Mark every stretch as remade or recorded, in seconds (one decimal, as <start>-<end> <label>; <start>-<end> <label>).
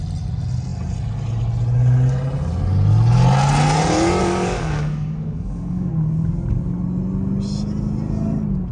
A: 0.0-4.2 recorded; 4.2-5.9 remade; 5.9-8.7 recorded